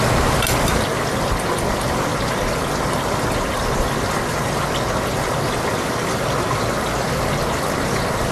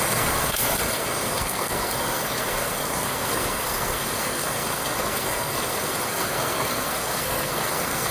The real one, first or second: first